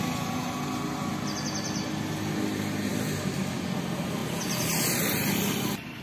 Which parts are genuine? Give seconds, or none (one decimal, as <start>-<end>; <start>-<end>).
0.0-6.0